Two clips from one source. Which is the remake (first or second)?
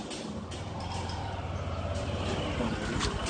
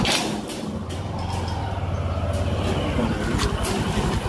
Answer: first